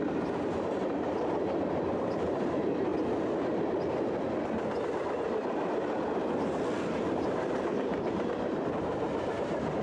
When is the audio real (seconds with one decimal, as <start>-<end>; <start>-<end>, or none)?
2.9-7.0